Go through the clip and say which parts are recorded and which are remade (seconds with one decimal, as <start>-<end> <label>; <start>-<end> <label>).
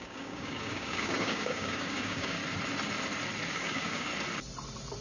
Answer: 0.0-2.4 remade; 2.4-3.5 recorded; 3.5-4.1 remade; 4.1-5.0 recorded